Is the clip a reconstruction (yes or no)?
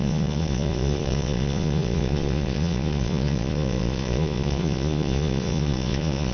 yes